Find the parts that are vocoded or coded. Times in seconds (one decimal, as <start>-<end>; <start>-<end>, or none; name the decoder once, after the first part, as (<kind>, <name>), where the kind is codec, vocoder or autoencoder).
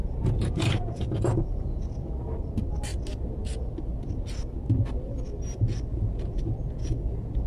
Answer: 0.0-2.1 (vocoder, Vocos); 5.9-7.5